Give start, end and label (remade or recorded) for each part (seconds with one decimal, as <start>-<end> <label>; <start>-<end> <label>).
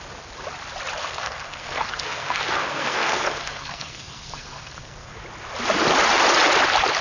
0.0-1.0 recorded; 1.0-5.2 remade; 5.2-7.0 recorded